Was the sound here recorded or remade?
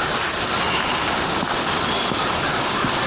recorded